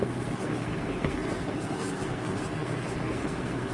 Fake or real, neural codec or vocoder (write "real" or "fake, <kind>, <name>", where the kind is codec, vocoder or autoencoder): fake, codec, SNAC